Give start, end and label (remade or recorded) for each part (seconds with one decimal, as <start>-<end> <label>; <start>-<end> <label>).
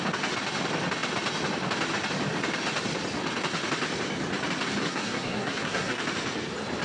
0.0-4.8 recorded; 4.8-6.0 remade; 6.0-6.8 recorded